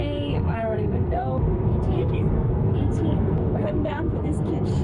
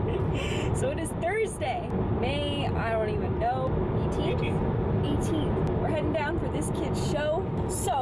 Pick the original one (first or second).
second